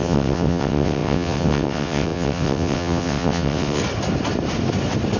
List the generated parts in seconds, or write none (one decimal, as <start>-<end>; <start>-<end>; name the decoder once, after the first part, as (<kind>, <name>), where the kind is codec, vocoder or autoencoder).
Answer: 0.0-3.8 (vocoder, WaveNeXt)